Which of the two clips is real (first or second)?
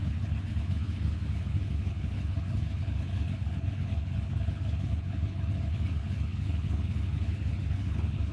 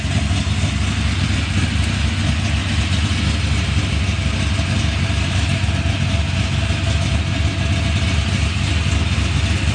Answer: second